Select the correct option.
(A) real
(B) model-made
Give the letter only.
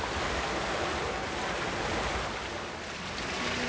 A